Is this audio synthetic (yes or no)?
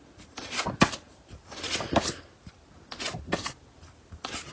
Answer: no